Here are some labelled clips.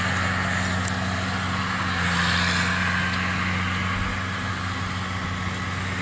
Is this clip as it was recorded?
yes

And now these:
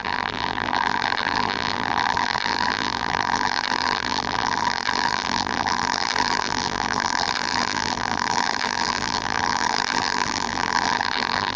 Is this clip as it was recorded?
no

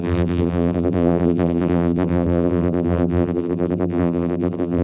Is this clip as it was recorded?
no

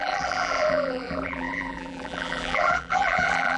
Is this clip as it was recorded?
no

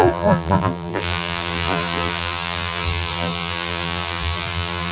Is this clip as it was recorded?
no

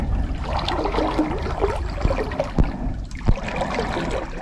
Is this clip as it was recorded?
yes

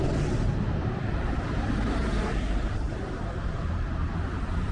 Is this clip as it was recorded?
no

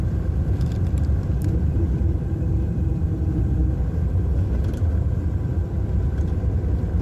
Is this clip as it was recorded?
no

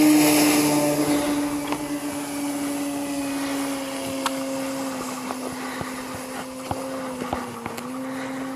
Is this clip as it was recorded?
yes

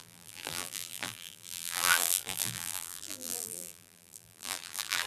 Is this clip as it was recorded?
no